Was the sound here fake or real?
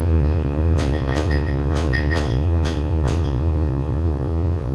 fake